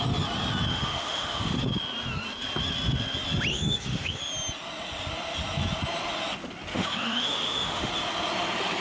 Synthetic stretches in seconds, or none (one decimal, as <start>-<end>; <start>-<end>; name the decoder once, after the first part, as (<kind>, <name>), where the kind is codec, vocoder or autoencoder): 0.7-1.6 (autoencoder, DAC-VAE); 3.5-4.2; 6.7-7.9